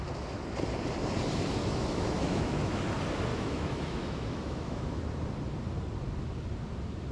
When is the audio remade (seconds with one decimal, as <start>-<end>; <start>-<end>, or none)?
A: 1.6-2.8; 3.3-5.0